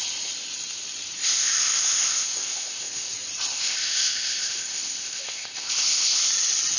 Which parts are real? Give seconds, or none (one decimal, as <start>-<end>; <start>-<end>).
0.0-1.2; 3.1-3.5; 6.3-6.8